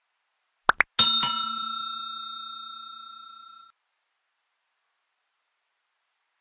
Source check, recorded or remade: recorded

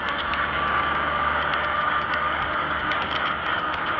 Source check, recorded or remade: remade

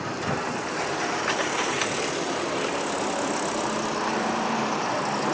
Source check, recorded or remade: recorded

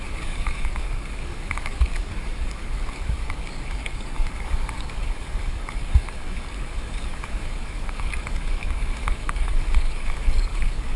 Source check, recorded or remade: remade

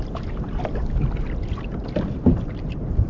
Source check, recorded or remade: recorded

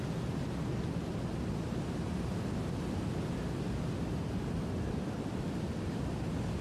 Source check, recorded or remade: recorded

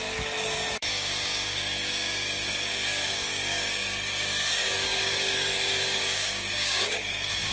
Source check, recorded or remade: remade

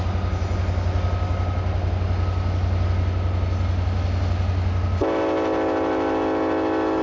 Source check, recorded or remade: recorded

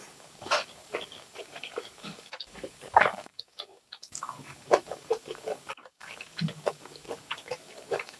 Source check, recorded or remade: remade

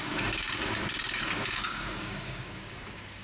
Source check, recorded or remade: remade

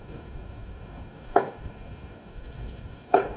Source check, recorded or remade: remade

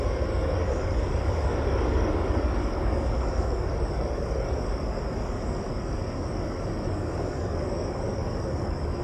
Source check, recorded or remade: remade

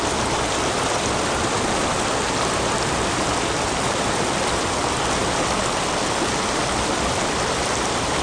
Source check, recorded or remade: recorded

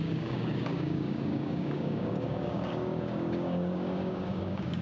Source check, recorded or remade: remade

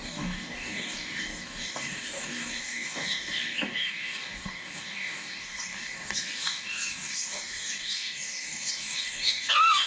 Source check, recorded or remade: remade